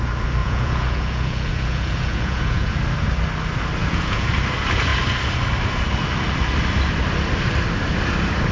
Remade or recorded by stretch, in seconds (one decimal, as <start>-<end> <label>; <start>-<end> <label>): 0.0-0.4 recorded; 0.4-2.8 remade; 2.8-3.8 recorded; 3.8-4.3 remade; 4.3-8.5 recorded